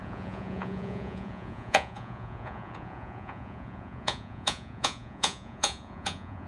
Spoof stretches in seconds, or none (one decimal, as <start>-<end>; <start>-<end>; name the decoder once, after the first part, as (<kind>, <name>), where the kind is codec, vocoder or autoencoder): 0.0-6.5 (vocoder, Vocos)